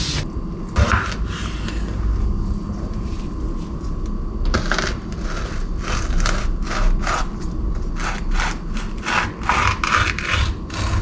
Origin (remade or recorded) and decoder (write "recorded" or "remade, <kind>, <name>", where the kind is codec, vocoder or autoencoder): recorded